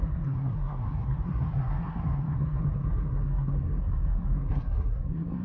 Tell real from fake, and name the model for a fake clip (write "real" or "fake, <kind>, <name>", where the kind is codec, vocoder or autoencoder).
fake, codec, SNAC